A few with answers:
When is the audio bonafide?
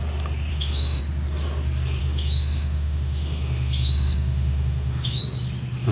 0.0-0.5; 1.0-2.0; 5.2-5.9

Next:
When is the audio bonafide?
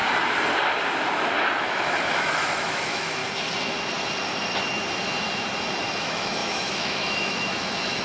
0.0-1.6; 3.2-6.0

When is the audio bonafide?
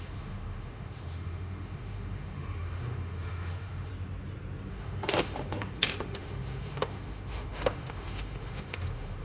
3.9-4.7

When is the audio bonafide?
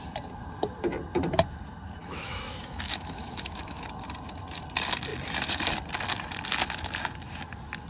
0.0-2.0; 3.8-7.9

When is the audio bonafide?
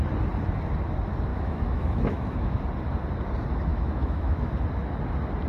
0.0-1.3; 2.6-3.7; 4.5-5.5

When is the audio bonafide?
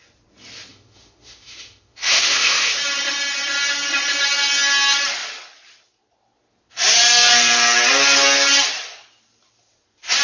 0.0-0.7; 2.8-10.2